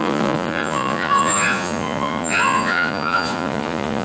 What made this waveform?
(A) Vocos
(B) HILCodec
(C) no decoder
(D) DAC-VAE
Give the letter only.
A